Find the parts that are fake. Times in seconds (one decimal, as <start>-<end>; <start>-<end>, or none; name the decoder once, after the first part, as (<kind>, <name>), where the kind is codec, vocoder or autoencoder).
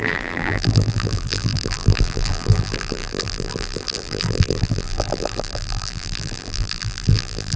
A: 0.0-7.6 (vocoder, BigVGAN v2)